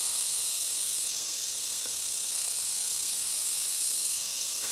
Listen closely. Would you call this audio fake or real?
fake